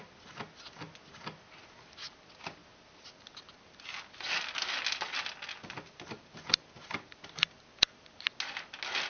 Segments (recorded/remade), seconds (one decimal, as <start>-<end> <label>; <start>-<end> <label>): 0.0-9.1 recorded